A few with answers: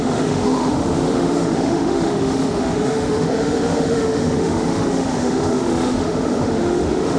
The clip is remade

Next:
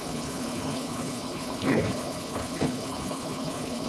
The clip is remade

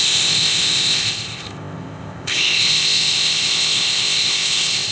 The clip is remade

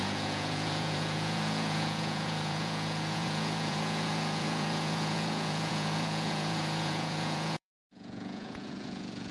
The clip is remade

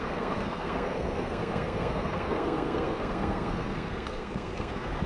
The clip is remade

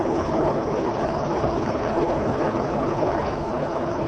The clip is remade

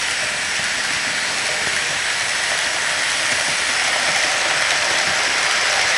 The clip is recorded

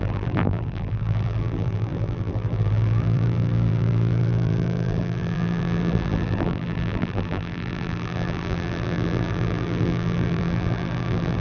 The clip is remade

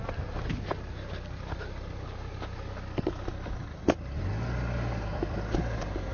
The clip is recorded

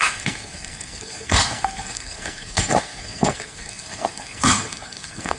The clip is remade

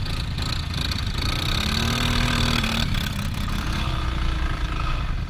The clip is recorded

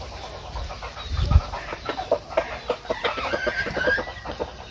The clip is remade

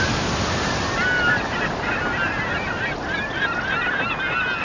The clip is recorded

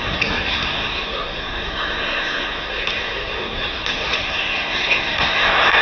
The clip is remade